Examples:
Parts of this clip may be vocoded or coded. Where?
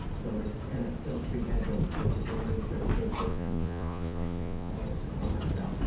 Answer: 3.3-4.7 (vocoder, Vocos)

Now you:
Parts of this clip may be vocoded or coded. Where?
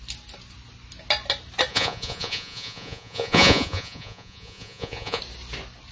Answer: 1.7-5.2 (vocoder, Vocos)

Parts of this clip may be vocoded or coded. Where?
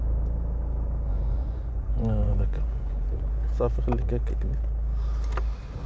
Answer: 1.1-3.3 (vocoder, Vocos)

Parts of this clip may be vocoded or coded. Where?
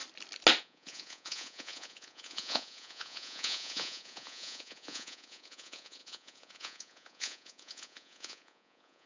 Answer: 0.6-9.1 (vocoder, Vocos)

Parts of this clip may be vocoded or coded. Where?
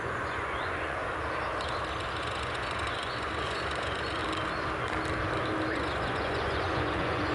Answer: 0.0-1.0 (vocoder, Vocos); 2.2-4.2; 5.7-7.3